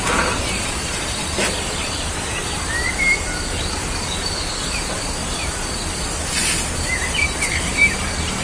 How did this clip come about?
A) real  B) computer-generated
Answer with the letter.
A